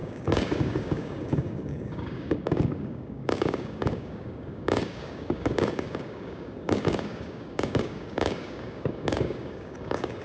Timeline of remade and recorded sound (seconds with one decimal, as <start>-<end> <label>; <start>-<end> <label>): 0.0-10.2 remade